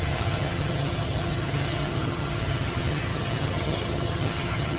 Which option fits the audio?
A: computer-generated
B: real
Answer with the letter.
A